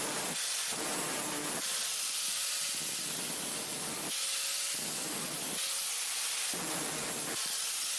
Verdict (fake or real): real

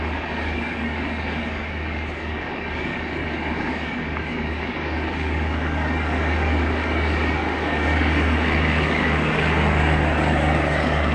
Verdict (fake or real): fake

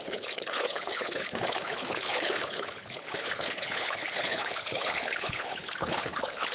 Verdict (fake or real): fake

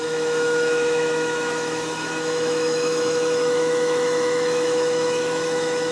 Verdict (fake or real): fake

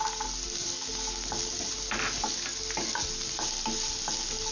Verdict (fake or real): real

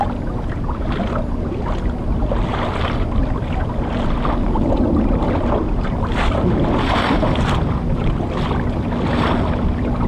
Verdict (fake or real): real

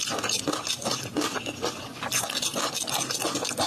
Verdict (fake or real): real